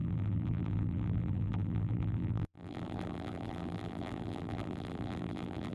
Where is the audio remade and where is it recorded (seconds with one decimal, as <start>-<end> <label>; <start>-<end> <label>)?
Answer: 0.0-5.7 remade

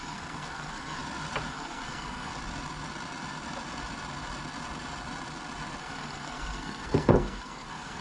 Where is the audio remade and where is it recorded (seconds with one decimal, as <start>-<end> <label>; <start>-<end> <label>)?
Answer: 0.0-1.0 remade; 1.0-1.5 recorded; 1.5-2.3 remade; 2.3-5.8 recorded; 5.8-8.0 remade

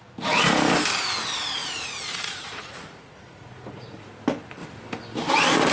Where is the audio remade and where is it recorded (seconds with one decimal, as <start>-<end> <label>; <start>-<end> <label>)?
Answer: 0.0-1.6 recorded; 1.6-4.0 remade; 4.0-5.7 recorded

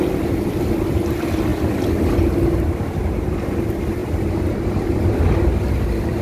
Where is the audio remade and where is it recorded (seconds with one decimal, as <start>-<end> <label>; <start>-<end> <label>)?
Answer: 0.0-6.2 recorded

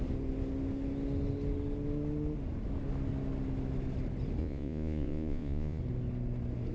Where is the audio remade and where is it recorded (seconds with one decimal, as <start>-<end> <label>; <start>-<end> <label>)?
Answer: 0.0-4.4 recorded; 4.4-5.8 remade; 5.8-6.7 recorded